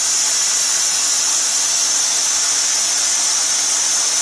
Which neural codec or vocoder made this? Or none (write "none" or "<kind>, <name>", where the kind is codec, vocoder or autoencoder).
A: none